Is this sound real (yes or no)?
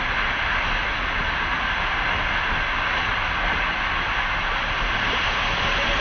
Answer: yes